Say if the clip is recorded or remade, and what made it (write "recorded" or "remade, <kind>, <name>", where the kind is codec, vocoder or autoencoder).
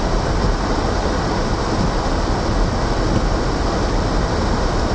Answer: recorded